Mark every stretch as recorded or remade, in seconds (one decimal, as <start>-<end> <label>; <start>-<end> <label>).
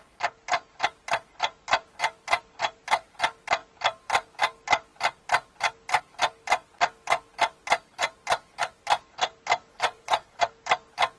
0.0-9.7 recorded; 9.7-10.4 remade; 10.4-11.2 recorded